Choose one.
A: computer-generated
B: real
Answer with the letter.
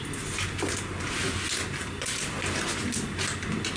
B